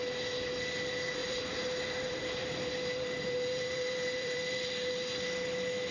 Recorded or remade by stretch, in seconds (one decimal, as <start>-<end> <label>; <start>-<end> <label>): 0.0-1.2 recorded; 1.2-4.7 remade; 4.7-5.9 recorded